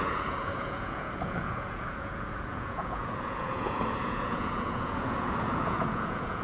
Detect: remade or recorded remade